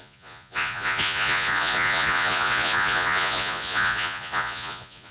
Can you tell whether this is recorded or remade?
remade